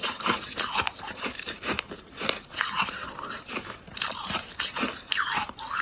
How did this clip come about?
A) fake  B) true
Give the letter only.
A